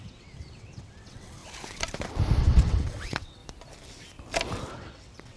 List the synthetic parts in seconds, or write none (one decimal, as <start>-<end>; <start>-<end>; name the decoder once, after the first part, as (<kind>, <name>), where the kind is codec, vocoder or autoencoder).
0.0-1.4 (vocoder, WaveNeXt); 2.4-3.4; 4.7-5.4